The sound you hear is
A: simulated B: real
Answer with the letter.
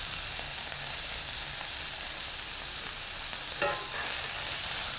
B